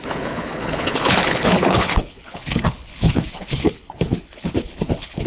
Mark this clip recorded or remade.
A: remade